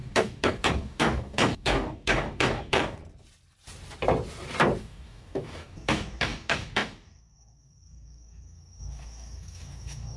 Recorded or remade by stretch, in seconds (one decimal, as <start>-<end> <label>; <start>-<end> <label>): 0.0-3.0 remade; 3.0-4.8 recorded; 4.8-10.2 remade